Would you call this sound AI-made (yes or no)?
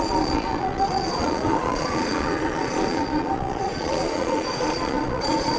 yes